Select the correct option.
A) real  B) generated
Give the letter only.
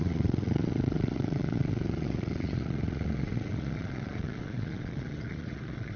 B